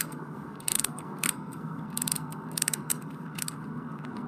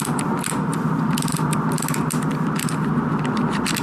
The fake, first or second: first